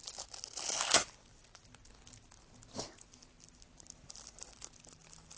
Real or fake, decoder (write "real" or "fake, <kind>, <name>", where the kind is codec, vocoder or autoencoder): real